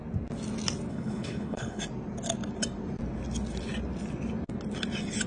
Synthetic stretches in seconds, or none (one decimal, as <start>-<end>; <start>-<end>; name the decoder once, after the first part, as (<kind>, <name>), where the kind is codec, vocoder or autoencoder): 0.9-1.8 (codec, HILCodec)